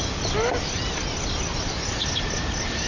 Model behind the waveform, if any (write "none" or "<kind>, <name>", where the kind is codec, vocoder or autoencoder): none